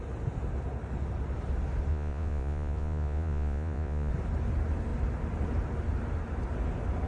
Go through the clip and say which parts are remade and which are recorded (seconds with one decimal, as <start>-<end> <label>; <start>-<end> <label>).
0.0-1.9 recorded; 1.9-4.1 remade; 4.1-7.1 recorded